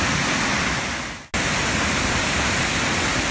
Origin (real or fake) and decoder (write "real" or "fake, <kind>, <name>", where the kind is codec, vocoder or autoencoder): real